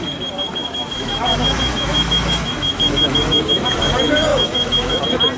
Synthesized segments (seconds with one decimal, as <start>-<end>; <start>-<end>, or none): 0.6-3.8; 4.3-5.0